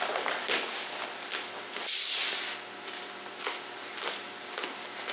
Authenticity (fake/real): real